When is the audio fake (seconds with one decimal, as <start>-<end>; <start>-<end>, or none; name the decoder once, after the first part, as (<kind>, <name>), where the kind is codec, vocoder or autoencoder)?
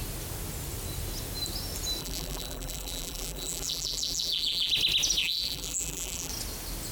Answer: 2.0-4.7 (vocoder, BigVGAN v2); 5.2-6.3